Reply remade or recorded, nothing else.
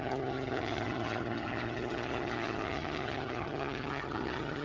remade